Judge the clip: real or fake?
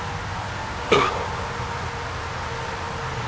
real